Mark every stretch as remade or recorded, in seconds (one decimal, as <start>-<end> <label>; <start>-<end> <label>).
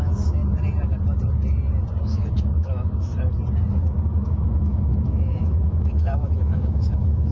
0.0-0.4 remade; 0.4-2.0 recorded; 2.0-3.1 remade; 3.1-4.1 recorded; 4.1-7.3 remade